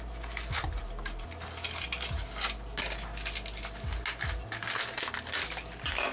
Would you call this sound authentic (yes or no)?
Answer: yes